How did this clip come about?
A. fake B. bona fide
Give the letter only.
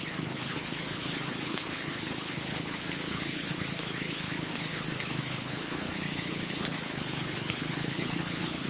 A